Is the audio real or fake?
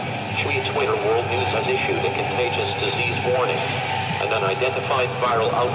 real